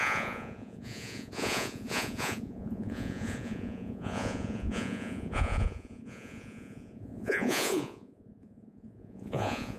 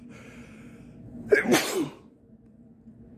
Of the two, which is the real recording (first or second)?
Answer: second